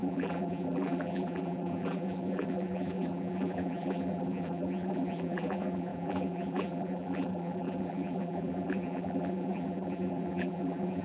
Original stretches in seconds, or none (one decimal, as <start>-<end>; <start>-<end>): none